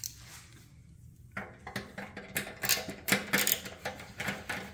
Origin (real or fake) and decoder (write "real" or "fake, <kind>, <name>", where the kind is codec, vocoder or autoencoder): real